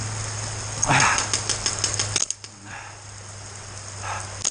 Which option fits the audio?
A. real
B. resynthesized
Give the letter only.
A